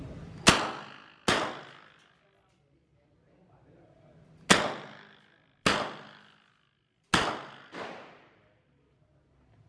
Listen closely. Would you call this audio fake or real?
real